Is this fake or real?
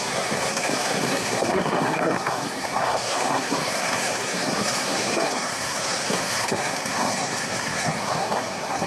fake